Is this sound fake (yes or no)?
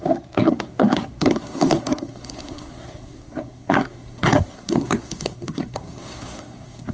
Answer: yes